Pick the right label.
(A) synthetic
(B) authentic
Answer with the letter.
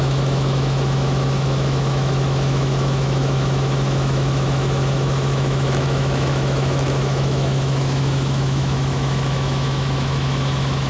A